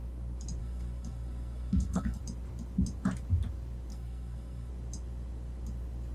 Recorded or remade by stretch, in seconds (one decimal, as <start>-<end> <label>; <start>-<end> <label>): 0.0-0.6 recorded; 0.6-2.2 remade; 2.2-3.9 recorded; 3.9-4.7 remade; 4.7-6.1 recorded